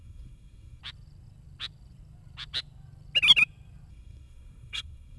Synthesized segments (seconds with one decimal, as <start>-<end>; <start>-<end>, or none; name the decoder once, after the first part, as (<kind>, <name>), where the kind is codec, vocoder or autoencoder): 0.0-0.8 (codec, SNAC); 3.9-5.2